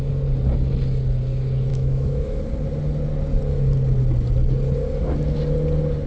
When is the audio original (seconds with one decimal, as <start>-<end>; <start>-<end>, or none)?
0.0-1.7; 2.4-6.1